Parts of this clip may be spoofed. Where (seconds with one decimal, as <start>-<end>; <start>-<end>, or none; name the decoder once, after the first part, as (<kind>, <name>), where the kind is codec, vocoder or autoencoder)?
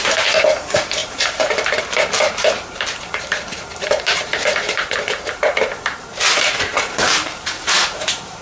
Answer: 0.0-8.4 (vocoder, BigVGAN v2)